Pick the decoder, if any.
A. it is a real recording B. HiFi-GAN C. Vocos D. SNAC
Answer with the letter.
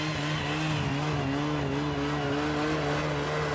A